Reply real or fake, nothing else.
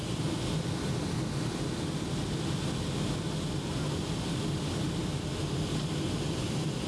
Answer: real